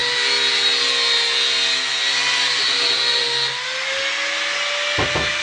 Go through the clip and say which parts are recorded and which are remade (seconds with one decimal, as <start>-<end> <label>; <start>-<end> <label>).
0.0-5.4 recorded